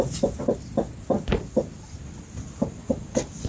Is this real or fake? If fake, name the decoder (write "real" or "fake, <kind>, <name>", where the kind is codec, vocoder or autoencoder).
real